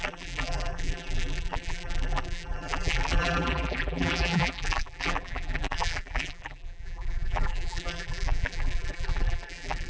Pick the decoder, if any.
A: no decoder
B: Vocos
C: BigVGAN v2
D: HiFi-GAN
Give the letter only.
C